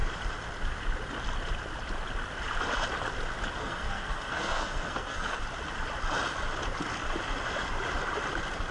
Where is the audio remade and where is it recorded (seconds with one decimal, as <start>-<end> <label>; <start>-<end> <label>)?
0.0-3.6 recorded; 3.6-5.4 remade; 5.4-8.7 recorded